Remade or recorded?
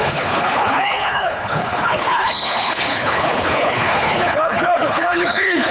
remade